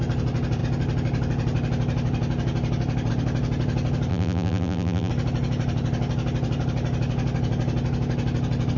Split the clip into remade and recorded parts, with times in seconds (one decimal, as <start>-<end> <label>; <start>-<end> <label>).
0.0-4.1 recorded; 4.1-5.1 remade; 5.1-8.8 recorded